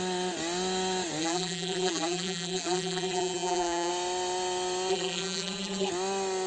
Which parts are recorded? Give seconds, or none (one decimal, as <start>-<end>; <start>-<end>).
0.0-1.2; 3.9-4.9; 5.9-6.5